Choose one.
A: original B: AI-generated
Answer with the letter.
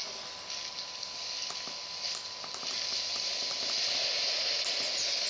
A